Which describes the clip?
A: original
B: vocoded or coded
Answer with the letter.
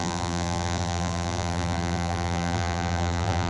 B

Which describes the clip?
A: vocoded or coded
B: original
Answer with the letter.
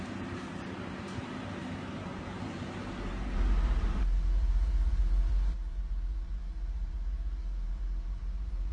A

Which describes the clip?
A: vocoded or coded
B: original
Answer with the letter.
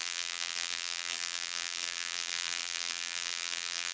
A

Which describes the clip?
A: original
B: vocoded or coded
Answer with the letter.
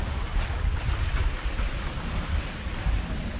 A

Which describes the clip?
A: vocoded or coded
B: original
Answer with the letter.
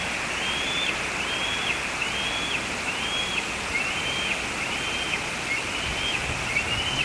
B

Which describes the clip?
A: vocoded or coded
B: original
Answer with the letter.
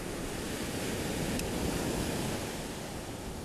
B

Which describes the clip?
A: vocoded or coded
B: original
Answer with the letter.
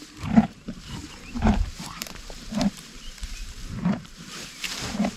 A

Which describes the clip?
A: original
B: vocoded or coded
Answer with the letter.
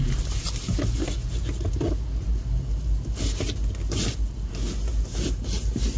A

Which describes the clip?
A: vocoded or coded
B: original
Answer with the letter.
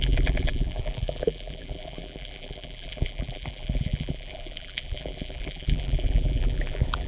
A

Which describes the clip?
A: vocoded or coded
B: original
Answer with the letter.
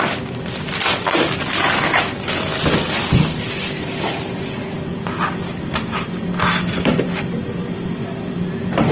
B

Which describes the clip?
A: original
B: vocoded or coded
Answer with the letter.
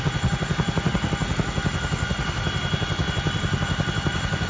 A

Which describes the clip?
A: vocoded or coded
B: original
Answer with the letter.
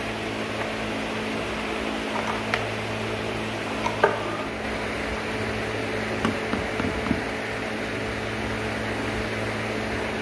B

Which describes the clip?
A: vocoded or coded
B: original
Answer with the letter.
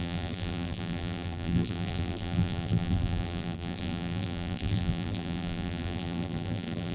A